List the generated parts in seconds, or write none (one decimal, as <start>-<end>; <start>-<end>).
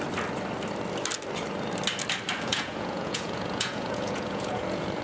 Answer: 2.5-5.0